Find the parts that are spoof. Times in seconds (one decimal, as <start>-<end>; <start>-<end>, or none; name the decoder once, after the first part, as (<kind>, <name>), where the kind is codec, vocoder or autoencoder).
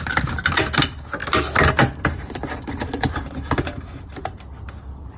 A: none